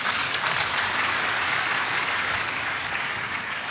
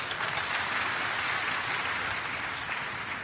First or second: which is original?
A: second